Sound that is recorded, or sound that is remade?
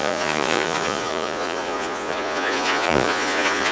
remade